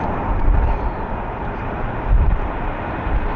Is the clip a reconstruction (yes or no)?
yes